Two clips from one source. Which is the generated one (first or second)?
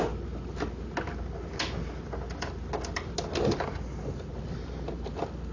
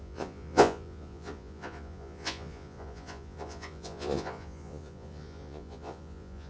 second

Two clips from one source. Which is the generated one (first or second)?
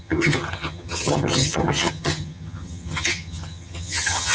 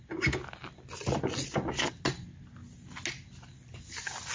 first